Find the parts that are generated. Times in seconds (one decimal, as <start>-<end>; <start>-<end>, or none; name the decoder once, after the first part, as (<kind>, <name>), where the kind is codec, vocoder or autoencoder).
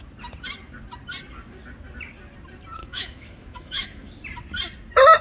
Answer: 2.8-4.1 (autoencoder, DAC-VAE)